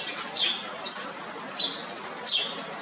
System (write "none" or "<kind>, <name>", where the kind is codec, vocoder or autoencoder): none